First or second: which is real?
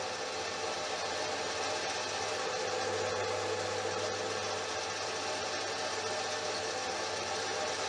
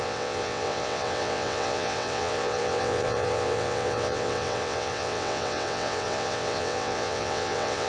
first